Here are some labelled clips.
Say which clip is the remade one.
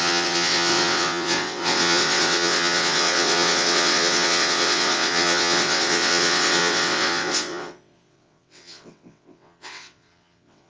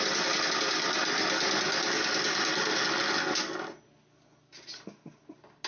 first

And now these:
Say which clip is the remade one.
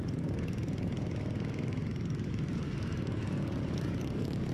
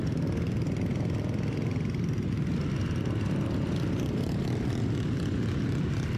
first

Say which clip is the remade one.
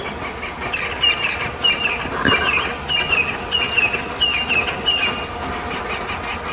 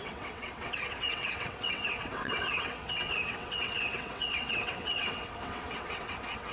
second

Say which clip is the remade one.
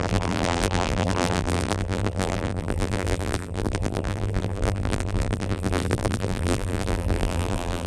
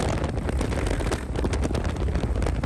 first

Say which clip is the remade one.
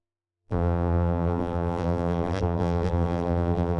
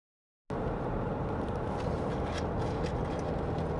first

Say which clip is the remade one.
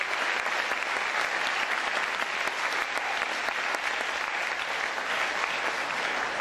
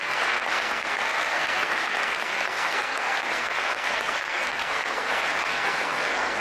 second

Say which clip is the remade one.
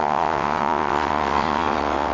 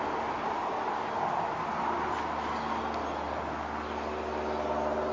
first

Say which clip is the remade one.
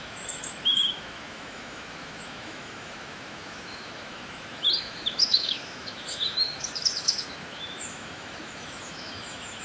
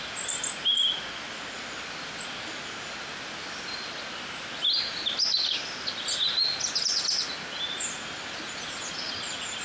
first